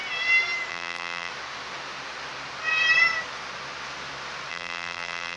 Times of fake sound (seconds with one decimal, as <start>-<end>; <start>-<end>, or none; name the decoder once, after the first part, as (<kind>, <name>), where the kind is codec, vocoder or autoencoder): 0.7-1.3 (vocoder, BigVGAN v2); 4.5-5.4